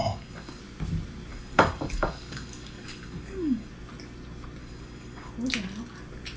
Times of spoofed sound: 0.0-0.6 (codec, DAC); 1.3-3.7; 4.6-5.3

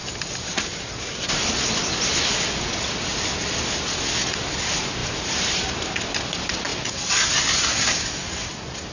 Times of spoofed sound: 0.0-1.5 (vocoder, BigVGAN v2); 5.0-5.9

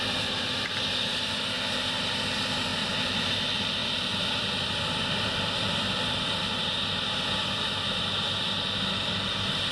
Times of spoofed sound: 2.7-3.3 (vocoder, BigVGAN v2); 3.8-8.0

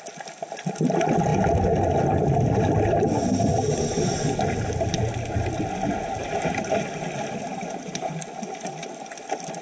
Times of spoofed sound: 6.2-6.7 (vocoder, BigVGAN v2); 7.5-8.1

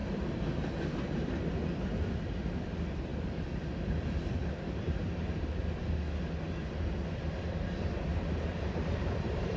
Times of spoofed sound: 0.0-8.1 (vocoder, BigVGAN v2); 8.8-9.6

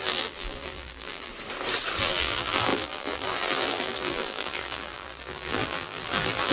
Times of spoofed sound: 0.0-1.3 (vocoder, BigVGAN v2); 2.0-6.5

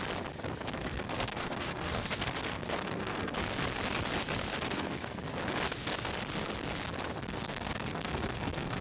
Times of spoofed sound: 0.8-3.4 (codec, SNAC); 4.5-5.2; 7.3-8.8